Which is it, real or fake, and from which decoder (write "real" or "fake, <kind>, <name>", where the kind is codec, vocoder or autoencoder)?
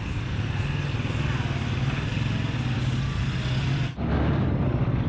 real